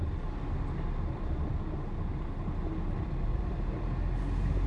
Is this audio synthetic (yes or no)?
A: no